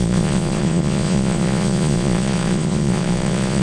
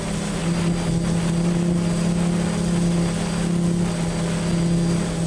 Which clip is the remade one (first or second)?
first